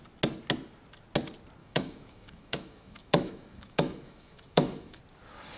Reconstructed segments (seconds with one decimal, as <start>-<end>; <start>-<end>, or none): 1.6-5.0